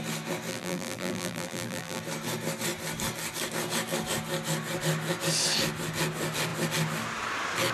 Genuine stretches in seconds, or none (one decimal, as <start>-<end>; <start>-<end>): 0.0-0.5; 2.0-7.7